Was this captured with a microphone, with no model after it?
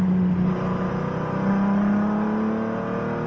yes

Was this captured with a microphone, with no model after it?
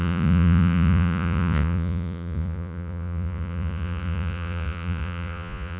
no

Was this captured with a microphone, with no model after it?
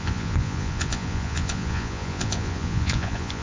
no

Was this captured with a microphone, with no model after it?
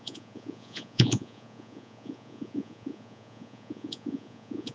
no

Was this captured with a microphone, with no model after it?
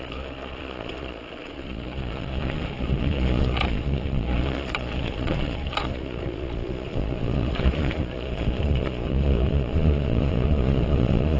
no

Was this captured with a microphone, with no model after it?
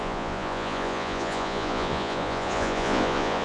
no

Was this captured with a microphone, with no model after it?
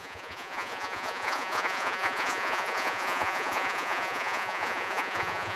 no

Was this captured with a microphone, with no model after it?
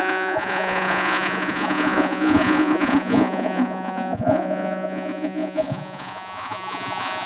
no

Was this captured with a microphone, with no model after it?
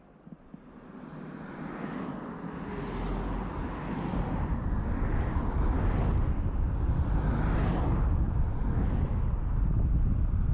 yes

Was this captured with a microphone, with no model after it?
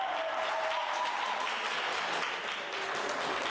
yes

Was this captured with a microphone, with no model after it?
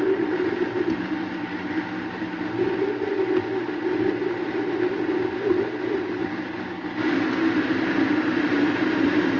yes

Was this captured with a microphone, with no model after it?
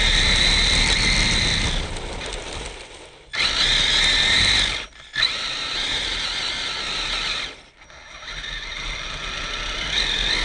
yes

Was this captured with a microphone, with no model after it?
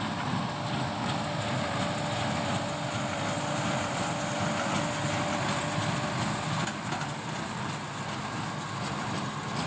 yes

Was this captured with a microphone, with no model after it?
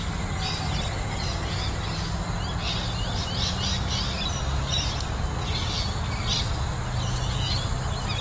yes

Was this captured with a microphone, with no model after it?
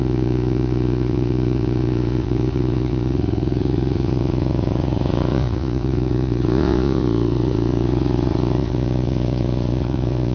no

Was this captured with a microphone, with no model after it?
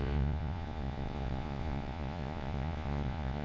no